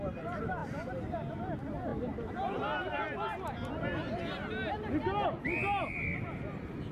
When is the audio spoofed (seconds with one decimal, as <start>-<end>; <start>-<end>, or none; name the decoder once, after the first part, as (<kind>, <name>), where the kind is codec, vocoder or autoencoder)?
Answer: none